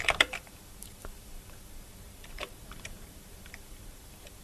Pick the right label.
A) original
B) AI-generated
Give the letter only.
B